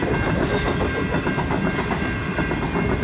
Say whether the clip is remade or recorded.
recorded